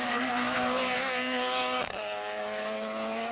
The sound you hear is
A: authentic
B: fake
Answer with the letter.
B